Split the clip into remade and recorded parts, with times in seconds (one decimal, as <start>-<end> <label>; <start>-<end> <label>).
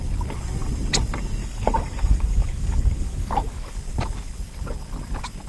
0.0-1.4 recorded; 1.4-3.7 remade; 3.7-5.5 recorded